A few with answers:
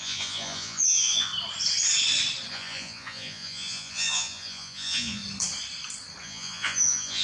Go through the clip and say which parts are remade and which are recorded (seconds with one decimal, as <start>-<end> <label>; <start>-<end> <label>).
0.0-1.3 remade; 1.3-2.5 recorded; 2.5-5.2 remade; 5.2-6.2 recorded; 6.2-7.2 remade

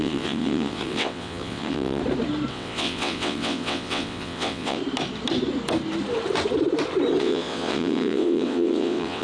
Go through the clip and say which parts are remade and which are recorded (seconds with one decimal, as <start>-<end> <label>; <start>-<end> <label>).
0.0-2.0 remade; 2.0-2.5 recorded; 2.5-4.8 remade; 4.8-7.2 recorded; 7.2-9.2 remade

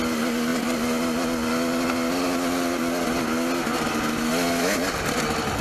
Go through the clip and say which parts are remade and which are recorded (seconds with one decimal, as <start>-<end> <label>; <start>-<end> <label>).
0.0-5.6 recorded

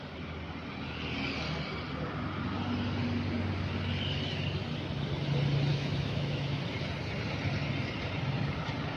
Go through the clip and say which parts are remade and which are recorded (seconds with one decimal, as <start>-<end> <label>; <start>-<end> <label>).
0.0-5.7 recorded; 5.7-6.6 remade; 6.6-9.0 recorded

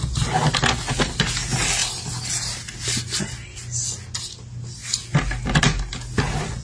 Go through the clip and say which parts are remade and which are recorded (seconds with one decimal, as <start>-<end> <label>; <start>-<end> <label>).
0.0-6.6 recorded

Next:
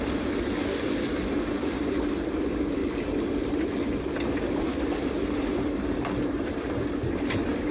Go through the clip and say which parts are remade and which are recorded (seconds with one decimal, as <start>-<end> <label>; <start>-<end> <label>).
0.0-7.7 recorded

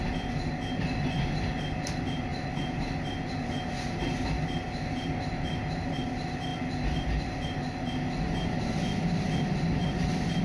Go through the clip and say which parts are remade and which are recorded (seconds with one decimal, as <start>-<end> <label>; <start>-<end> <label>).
0.0-9.8 recorded; 9.8-10.4 remade

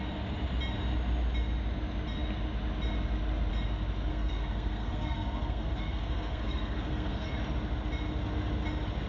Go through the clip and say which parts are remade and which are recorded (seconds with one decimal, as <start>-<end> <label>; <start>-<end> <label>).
0.0-4.1 recorded; 4.1-7.3 remade; 7.3-9.1 recorded